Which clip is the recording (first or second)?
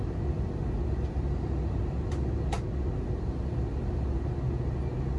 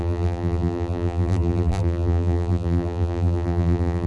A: first